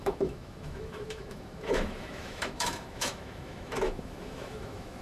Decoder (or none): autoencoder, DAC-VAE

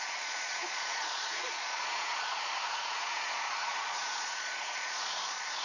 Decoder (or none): vocoder, Vocos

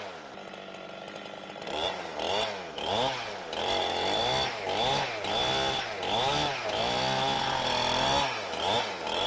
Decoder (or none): none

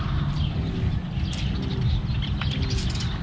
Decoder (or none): none